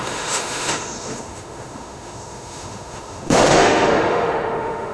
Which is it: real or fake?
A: fake